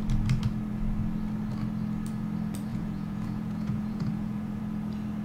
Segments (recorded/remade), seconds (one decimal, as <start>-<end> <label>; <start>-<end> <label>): 0.0-2.7 recorded; 2.7-4.6 remade; 4.6-5.2 recorded

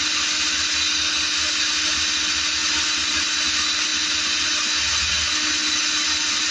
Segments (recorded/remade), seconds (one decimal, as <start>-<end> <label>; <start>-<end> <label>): 0.0-2.6 recorded; 2.6-3.4 remade; 3.4-3.9 recorded; 3.9-5.1 remade; 5.1-6.5 recorded

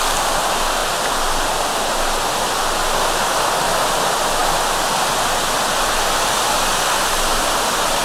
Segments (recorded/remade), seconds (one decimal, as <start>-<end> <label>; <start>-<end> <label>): 0.0-8.0 recorded

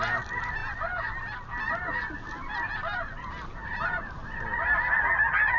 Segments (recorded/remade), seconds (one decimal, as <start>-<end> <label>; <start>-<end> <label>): 0.0-5.6 recorded

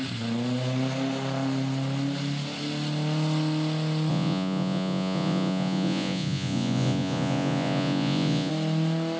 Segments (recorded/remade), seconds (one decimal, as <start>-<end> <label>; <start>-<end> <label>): 0.0-4.1 recorded; 4.1-8.5 remade; 8.5-9.2 recorded

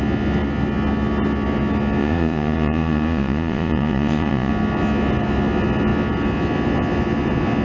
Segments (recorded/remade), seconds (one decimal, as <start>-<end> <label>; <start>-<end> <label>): 0.0-2.0 recorded; 2.0-4.5 remade; 4.5-7.6 recorded

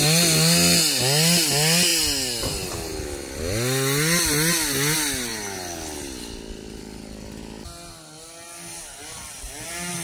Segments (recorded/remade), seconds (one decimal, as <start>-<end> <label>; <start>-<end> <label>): 0.0-10.0 recorded